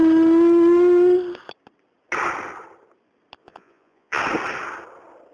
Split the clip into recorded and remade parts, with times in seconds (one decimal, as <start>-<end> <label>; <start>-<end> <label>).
0.0-3.4 recorded; 3.4-4.2 remade; 4.2-5.3 recorded